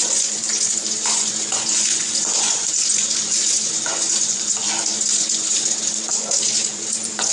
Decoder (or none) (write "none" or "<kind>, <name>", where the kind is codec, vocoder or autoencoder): vocoder, Vocos